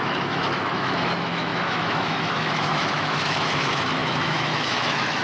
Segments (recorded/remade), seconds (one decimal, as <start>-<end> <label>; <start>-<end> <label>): 0.0-5.2 remade